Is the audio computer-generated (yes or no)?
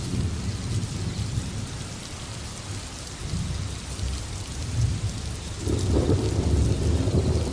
no